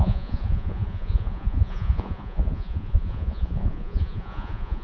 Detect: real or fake fake